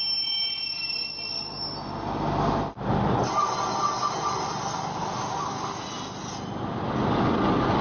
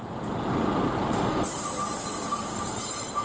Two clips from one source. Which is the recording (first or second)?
first